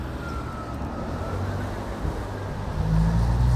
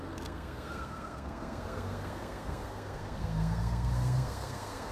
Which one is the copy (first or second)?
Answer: second